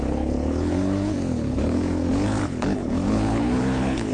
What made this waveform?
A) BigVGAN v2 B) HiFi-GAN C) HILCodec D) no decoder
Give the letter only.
C